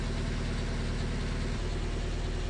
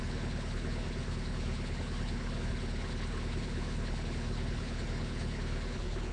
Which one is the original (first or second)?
first